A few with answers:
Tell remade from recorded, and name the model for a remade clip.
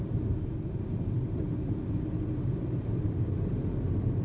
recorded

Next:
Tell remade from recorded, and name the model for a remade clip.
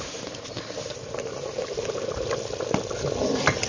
recorded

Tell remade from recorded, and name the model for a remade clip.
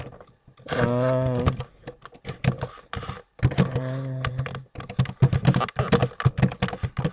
recorded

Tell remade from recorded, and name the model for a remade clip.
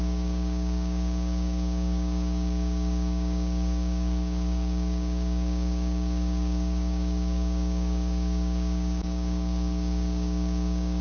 remade, codec, DAC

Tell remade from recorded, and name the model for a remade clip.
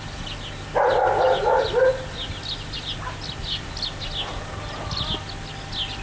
recorded